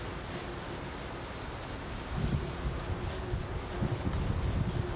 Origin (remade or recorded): recorded